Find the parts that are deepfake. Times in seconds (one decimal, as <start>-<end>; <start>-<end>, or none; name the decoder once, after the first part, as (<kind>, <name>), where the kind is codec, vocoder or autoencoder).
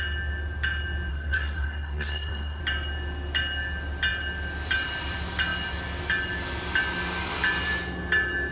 1.1-2.6 (codec, SNAC)